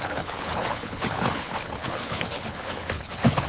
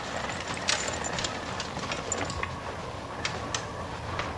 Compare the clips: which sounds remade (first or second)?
first